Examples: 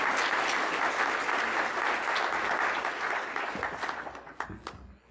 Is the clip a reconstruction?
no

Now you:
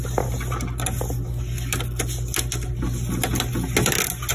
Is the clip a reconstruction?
no